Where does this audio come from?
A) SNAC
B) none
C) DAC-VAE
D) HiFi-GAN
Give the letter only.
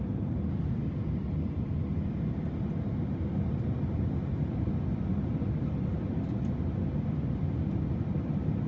B